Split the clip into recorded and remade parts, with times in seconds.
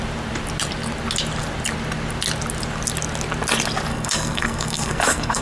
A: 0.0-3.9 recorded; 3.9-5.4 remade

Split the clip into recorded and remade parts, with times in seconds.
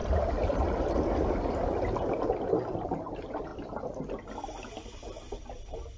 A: 0.0-6.0 recorded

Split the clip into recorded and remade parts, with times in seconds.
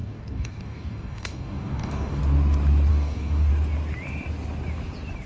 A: 0.0-2.2 remade; 2.2-2.9 recorded; 2.9-3.5 remade; 3.5-5.3 recorded